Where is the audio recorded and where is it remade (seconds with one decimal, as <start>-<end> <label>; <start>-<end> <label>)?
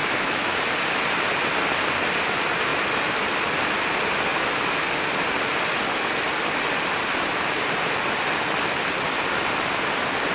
0.0-0.6 remade; 0.6-10.3 recorded